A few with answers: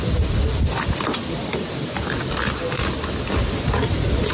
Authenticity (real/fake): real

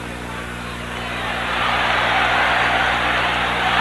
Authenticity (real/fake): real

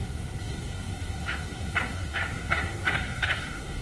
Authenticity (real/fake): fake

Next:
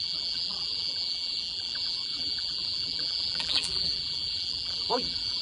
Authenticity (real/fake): fake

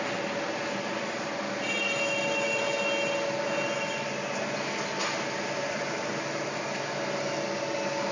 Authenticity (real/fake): real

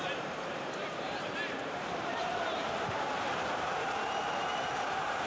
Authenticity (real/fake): fake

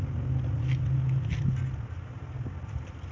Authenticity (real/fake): real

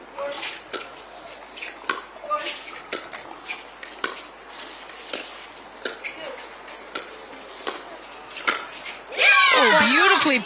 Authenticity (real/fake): real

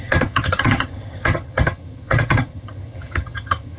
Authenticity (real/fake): fake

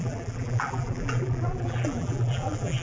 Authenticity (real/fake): fake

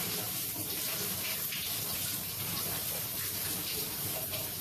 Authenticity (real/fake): fake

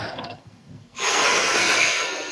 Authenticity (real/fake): fake